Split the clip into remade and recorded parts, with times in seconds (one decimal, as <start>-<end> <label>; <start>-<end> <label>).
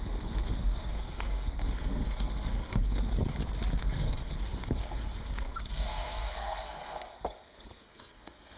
0.0-3.1 remade; 3.1-3.8 recorded; 3.8-8.6 remade